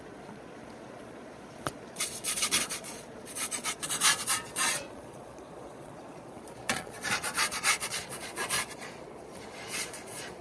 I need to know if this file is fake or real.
fake